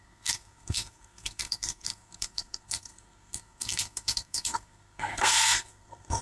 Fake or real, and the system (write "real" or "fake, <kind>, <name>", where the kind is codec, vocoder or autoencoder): fake, codec, SNAC